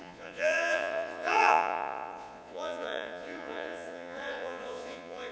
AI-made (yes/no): yes